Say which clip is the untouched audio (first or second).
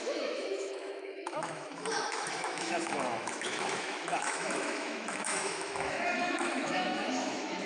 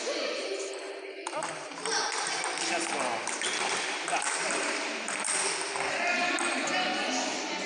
second